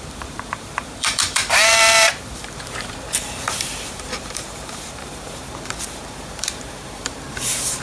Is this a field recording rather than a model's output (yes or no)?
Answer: no